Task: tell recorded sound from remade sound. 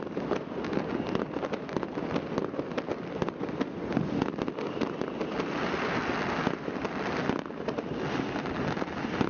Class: recorded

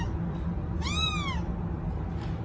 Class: recorded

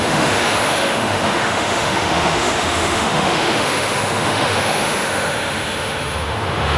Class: remade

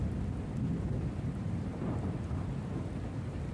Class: recorded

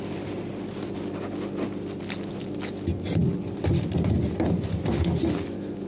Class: recorded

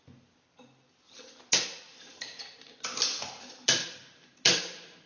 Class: recorded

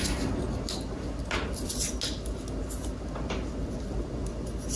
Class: recorded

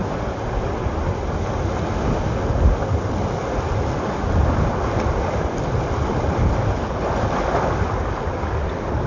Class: recorded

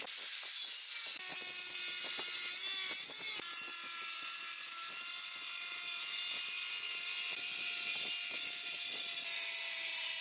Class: recorded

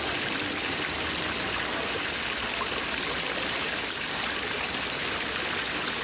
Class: recorded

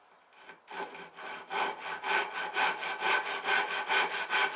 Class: recorded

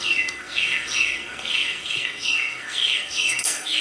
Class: remade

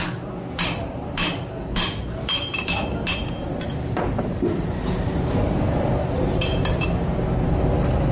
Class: recorded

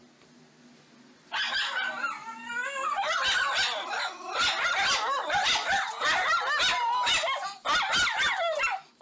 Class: recorded